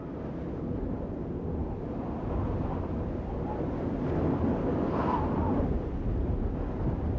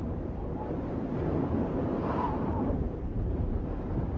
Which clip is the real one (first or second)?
first